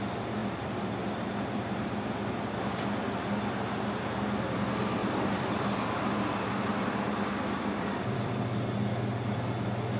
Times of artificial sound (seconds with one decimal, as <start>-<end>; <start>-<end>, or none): 0.4-1.9; 5.0-8.4